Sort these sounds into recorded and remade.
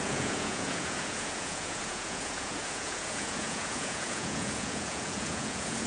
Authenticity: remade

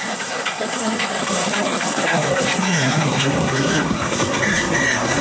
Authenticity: remade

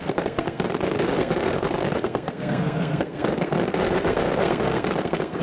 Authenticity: remade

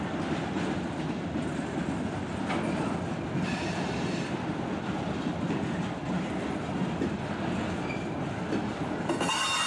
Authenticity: recorded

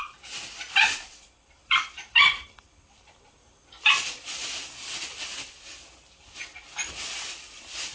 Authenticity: recorded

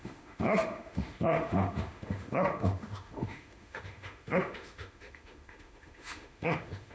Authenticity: remade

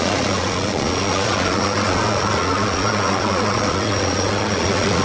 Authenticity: remade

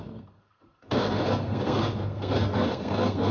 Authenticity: remade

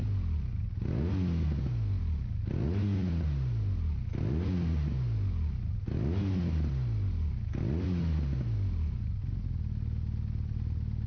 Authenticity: recorded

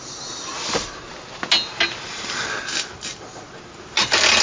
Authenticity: recorded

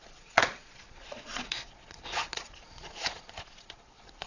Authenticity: remade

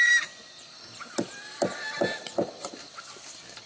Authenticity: recorded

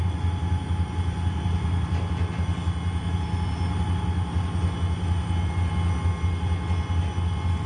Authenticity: recorded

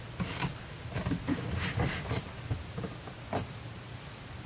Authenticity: recorded